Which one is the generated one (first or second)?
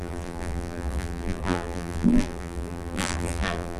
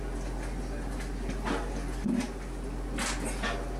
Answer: first